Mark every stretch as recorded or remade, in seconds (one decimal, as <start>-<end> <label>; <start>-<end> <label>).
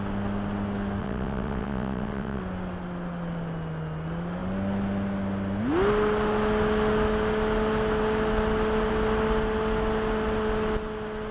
0.0-1.0 recorded; 1.0-2.4 remade; 2.4-11.3 recorded